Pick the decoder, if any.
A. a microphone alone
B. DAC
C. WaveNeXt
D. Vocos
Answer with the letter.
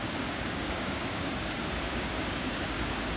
B